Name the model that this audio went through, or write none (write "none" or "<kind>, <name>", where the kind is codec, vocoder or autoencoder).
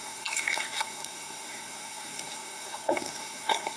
codec, SNAC